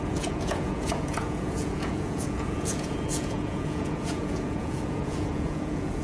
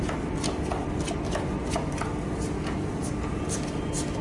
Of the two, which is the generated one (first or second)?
first